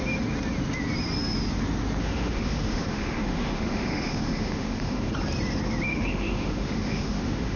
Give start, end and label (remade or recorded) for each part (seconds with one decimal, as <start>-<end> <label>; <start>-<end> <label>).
0.0-2.0 recorded; 2.0-5.1 remade; 5.1-5.9 recorded; 5.9-7.6 remade